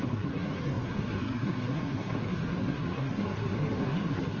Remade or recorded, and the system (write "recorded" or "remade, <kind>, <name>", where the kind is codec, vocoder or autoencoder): remade, codec, SNAC